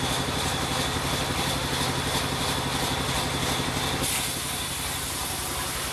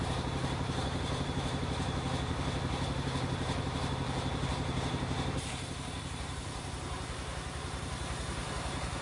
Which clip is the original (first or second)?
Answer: first